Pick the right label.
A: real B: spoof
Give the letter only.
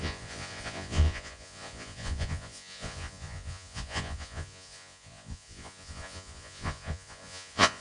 B